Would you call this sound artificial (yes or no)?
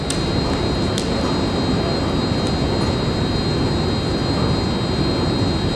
no